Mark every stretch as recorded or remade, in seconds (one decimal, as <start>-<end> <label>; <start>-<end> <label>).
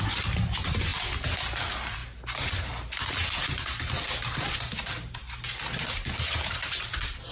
0.0-0.9 remade; 0.9-1.6 recorded; 1.6-2.0 remade; 2.0-3.5 recorded; 3.5-5.2 remade; 5.2-6.3 recorded; 6.3-7.3 remade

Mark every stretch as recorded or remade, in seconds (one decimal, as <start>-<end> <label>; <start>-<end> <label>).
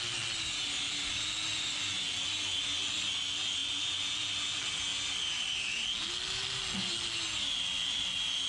0.0-8.5 recorded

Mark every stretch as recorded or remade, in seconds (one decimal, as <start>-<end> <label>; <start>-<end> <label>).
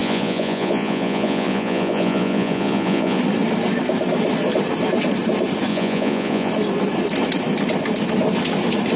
0.0-3.2 remade; 3.2-5.7 recorded; 5.7-6.5 remade; 6.5-9.0 recorded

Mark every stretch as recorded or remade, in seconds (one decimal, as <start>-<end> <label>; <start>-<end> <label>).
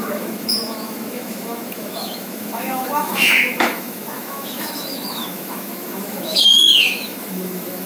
0.0-7.9 remade